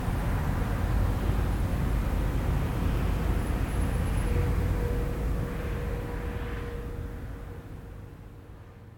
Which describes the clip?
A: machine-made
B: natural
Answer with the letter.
B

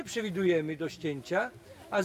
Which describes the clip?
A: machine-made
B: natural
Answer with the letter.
B